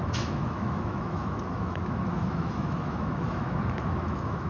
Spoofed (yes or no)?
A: yes